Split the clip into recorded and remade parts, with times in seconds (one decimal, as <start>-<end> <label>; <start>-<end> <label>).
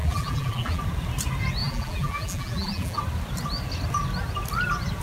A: 0.0-0.8 remade; 0.8-1.6 recorded; 1.6-3.0 remade; 3.0-5.0 recorded